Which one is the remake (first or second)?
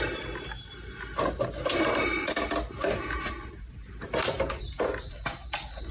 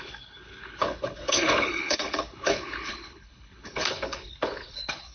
second